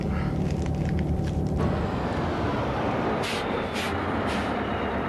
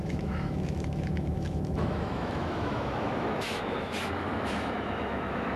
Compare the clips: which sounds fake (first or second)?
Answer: second